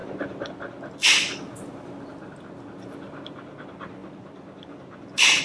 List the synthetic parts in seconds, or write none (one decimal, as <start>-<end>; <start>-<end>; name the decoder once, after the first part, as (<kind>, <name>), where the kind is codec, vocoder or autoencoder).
0.0-0.5 (vocoder, BigVGAN v2); 4.0-5.4